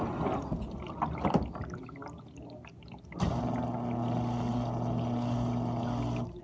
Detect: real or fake real